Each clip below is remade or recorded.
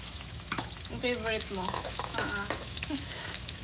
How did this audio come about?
remade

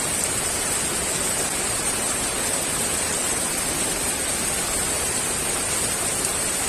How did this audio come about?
recorded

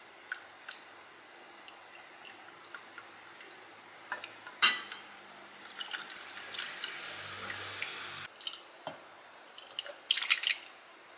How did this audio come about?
recorded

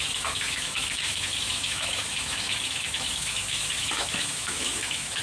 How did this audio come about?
remade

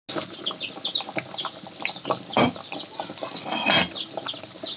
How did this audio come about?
recorded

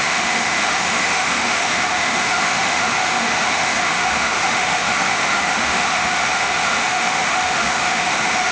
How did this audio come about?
remade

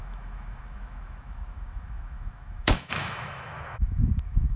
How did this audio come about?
remade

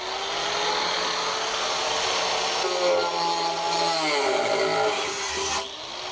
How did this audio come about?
recorded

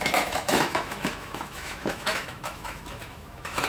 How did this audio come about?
remade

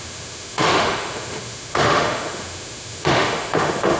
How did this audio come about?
remade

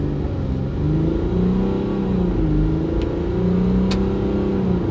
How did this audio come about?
recorded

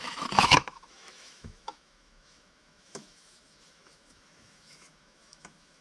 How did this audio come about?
remade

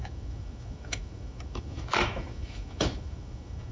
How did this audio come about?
remade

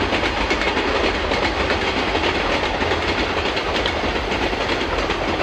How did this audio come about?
recorded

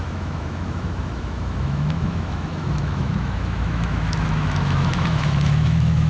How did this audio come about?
remade